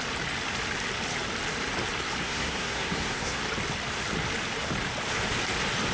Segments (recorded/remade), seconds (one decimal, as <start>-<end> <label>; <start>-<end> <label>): 0.0-2.2 recorded; 2.2-3.4 remade; 3.4-5.9 recorded